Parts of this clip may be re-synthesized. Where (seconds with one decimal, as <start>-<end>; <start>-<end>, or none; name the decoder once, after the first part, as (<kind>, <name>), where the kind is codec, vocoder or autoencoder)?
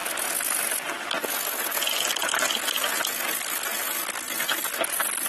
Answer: 2.3-4.0 (vocoder, BigVGAN v2)